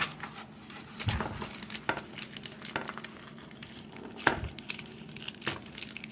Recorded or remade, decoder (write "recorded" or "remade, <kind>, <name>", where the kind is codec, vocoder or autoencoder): recorded